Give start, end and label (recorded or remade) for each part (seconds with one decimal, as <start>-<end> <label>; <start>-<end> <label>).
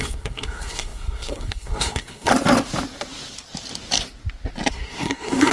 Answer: 0.0-2.3 remade; 2.3-4.7 recorded; 4.7-5.5 remade